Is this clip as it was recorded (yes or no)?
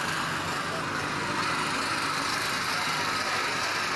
yes